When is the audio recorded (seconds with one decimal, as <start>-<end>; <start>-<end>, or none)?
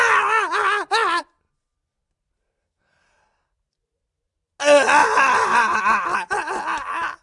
0.0-5.0; 5.8-7.2